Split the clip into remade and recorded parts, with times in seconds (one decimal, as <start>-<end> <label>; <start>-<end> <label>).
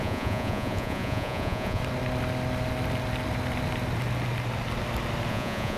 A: 0.0-1.8 remade; 1.8-5.3 recorded; 5.3-5.8 remade